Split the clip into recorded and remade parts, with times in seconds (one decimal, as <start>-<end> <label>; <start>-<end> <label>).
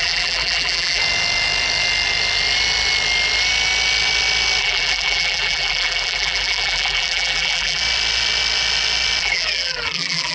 0.0-1.0 remade; 1.0-4.6 recorded; 4.6-7.8 remade; 7.8-9.2 recorded; 9.2-10.3 remade